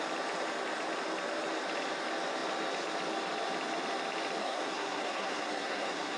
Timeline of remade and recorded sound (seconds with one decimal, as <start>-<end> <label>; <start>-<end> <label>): 0.0-4.4 recorded; 4.4-6.2 remade